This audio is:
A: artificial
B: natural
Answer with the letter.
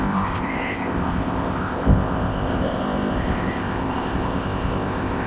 A